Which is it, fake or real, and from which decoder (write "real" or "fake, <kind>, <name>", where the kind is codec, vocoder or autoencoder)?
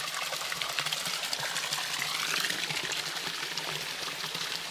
real